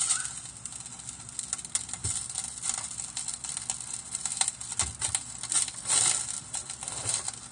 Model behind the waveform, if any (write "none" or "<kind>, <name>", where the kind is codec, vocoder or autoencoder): none